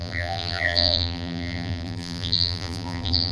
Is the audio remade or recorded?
remade